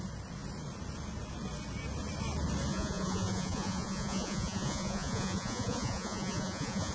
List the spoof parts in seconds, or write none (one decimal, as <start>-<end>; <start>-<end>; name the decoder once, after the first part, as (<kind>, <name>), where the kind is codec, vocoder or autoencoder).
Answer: 2.7-6.9 (vocoder, Vocos)